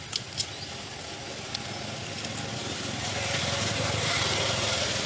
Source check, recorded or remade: recorded